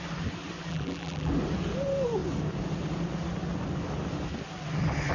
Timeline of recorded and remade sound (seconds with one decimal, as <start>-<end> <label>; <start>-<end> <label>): 0.0-0.7 recorded; 0.7-1.3 remade; 1.3-5.1 recorded